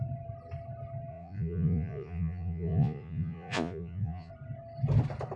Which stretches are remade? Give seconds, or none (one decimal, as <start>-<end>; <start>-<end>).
1.1-4.3